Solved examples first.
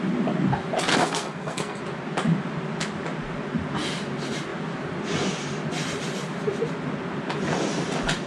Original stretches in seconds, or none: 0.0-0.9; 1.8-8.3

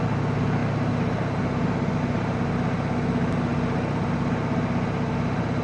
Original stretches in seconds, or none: 0.0-5.6

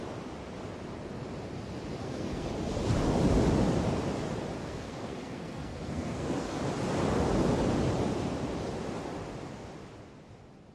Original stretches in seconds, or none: 0.0-2.0; 2.5-4.6; 6.6-10.7